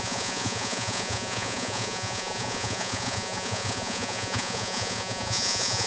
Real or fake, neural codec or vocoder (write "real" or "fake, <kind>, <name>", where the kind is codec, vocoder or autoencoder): fake, vocoder, Vocos